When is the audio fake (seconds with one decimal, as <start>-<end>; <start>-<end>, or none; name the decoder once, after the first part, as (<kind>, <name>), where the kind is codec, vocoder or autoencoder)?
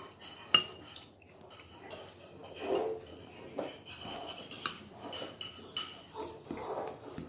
none